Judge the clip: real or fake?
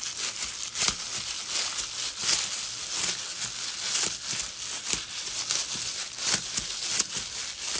real